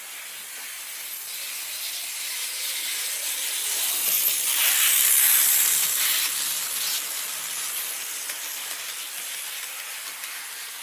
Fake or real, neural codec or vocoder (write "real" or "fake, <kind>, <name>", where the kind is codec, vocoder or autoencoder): real